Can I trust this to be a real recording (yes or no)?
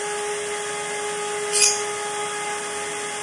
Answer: yes